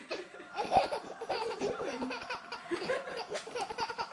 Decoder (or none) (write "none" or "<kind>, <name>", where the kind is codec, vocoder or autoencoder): vocoder, BigVGAN v2